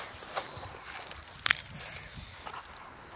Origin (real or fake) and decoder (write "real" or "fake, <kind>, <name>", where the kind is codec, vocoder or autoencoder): real